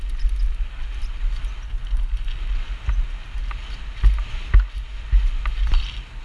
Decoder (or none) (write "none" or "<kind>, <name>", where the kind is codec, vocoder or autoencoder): none